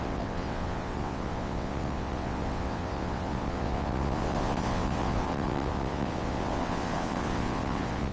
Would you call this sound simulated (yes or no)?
yes